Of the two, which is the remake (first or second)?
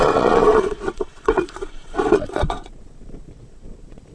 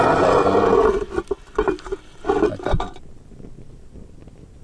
first